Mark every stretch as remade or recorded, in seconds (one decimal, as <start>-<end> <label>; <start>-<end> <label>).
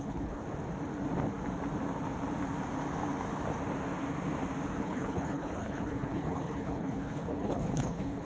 0.0-0.4 remade; 0.4-4.8 recorded; 4.8-8.2 remade